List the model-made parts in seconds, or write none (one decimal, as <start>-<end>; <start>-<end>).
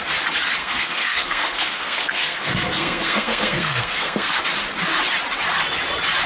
0.6-4.4